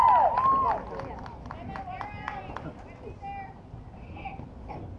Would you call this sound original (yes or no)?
yes